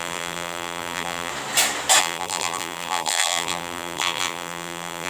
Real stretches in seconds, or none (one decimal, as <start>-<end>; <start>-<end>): 1.3-2.0